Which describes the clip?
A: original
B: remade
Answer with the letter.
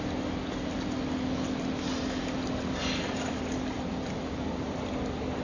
A